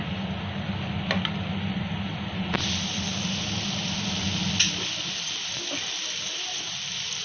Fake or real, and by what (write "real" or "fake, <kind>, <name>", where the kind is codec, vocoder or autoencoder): real